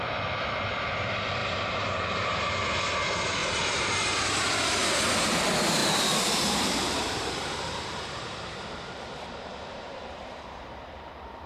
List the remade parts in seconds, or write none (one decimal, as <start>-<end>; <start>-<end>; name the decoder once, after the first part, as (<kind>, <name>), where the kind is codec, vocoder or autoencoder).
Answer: 1.4-2.5 (vocoder, BigVGAN v2); 3.4-3.9; 5.8-11.1